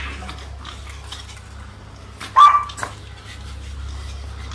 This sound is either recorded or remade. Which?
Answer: recorded